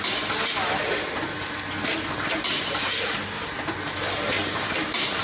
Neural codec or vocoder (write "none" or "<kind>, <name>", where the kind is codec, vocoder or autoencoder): none